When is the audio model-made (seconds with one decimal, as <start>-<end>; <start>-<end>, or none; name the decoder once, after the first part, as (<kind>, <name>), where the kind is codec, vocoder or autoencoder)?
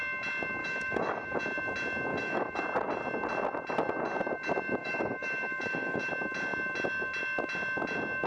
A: 0.6-1.4 (autoencoder, DAC-VAE); 2.1-2.6; 4.8-6.1